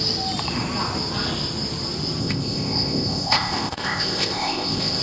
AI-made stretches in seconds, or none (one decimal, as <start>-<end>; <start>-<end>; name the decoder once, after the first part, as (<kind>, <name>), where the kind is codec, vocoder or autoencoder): 2.2-5.0 (codec, ZipCodec)